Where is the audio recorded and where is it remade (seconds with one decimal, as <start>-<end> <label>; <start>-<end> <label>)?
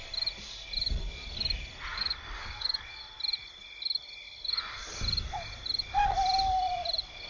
0.0-1.9 recorded; 1.9-3.0 remade; 3.0-7.3 recorded